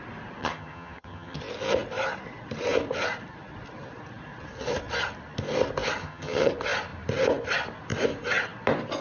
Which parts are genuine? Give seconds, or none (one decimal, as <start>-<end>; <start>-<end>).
0.0-0.4; 1.4-6.0; 6.5-9.0